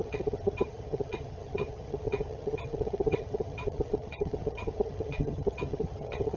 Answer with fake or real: fake